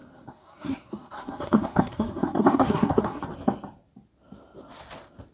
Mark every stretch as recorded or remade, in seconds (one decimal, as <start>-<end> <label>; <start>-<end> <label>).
0.0-3.2 remade; 3.2-5.3 recorded